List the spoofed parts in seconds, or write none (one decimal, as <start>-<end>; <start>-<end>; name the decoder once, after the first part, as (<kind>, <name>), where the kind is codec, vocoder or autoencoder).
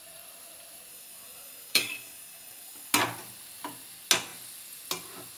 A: 0.9-2.9 (codec, DAC)